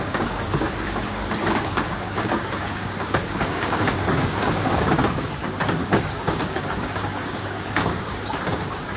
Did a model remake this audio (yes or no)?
yes